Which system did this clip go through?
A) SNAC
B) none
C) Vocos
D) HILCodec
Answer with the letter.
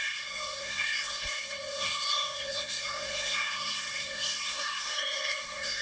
A